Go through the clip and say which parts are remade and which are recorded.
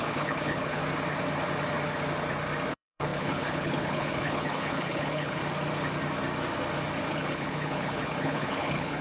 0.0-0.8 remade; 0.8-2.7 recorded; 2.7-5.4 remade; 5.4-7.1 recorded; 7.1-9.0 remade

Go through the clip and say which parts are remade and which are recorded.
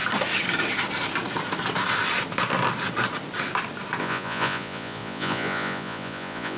0.0-4.0 recorded; 4.0-6.6 remade